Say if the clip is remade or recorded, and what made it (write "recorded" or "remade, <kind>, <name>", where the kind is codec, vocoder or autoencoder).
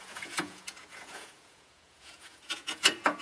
remade, vocoder, Vocos